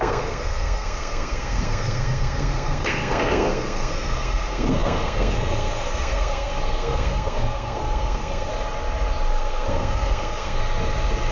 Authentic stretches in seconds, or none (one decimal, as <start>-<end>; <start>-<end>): 8.5-9.3; 10.6-11.3